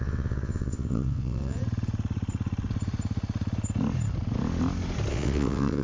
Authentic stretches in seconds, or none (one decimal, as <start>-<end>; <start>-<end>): 1.6-5.1